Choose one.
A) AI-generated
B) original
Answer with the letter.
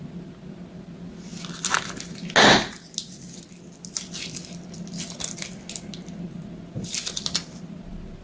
B